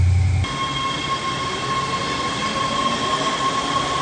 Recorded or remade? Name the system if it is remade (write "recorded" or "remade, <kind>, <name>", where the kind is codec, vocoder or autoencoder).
recorded